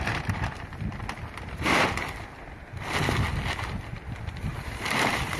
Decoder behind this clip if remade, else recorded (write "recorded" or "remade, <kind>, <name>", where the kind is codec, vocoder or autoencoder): recorded